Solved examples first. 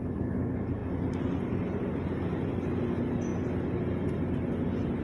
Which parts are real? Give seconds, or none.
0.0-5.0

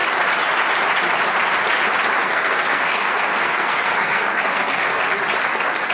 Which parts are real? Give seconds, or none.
0.0-2.2; 5.1-5.9

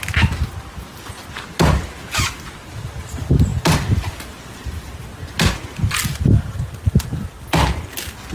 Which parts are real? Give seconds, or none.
0.0-8.3

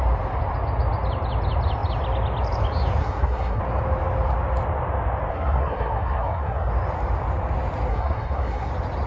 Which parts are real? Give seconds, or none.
0.0-3.0; 3.6-5.3; 6.7-7.9; 8.7-9.1

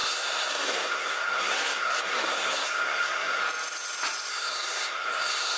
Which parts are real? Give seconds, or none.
3.4-4.3